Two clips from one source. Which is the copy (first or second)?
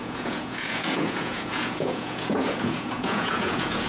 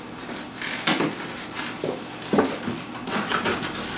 first